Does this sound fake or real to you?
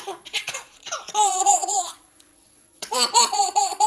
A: fake